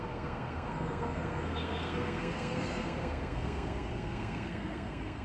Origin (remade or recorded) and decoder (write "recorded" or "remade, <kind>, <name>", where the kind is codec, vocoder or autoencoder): remade, codec, SNAC